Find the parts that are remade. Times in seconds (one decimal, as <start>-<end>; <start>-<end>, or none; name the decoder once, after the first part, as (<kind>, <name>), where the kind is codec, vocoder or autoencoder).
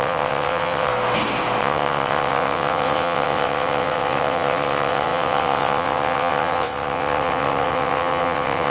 0.0-0.9 (vocoder, WaveNeXt); 1.6-8.7